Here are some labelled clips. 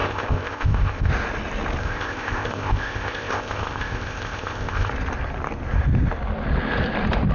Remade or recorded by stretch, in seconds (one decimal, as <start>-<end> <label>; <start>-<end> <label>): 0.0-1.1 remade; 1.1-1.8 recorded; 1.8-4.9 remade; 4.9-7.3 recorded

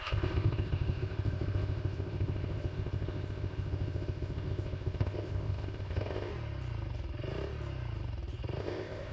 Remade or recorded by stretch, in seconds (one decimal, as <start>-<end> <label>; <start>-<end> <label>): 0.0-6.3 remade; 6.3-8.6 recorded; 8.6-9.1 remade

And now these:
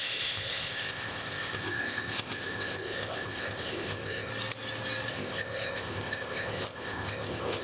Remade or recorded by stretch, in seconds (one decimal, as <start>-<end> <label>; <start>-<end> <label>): 0.0-4.3 remade; 4.3-5.1 recorded; 5.1-7.6 remade